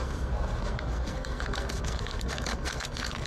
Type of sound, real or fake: fake